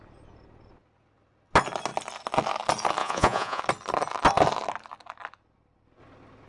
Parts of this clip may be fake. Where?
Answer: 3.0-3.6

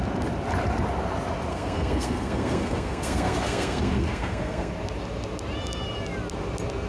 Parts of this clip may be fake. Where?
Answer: 1.5-4.7

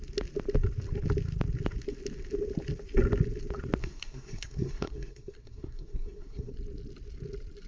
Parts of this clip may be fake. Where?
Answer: 3.8-6.5